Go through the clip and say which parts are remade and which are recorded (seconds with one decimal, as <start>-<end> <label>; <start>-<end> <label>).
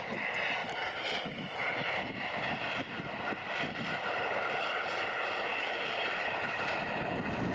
0.0-5.5 recorded; 5.5-6.0 remade; 6.0-7.5 recorded